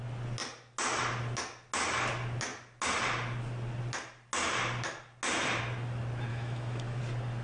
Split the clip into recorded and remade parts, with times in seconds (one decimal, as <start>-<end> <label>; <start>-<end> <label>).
0.0-6.3 recorded; 6.3-7.0 remade; 7.0-7.4 recorded